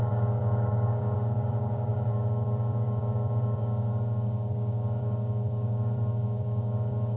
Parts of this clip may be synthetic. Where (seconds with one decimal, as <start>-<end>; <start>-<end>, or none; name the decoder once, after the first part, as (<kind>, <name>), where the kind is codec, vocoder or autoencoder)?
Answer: 0.0-7.2 (codec, DAC)

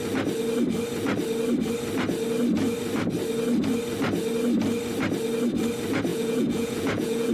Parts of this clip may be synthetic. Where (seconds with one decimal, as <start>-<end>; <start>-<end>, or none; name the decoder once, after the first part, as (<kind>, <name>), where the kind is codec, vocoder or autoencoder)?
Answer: 6.1-7.3 (vocoder, Vocos)

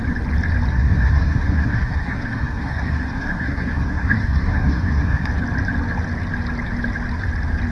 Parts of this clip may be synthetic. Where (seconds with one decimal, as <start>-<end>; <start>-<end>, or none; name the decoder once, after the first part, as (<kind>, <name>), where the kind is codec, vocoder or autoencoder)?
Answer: 0.7-5.3 (codec, SNAC)

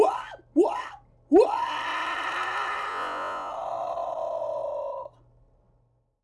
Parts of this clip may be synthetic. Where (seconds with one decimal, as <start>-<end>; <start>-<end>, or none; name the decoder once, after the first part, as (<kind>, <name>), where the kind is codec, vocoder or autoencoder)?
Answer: 2.9-3.5 (vocoder, Vocos)

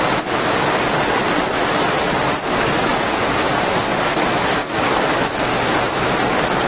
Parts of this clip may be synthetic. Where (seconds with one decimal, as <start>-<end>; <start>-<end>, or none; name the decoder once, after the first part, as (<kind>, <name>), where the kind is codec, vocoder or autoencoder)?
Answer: 2.9-3.5 (vocoder, Vocos)